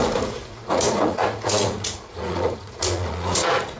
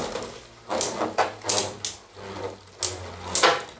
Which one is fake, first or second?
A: first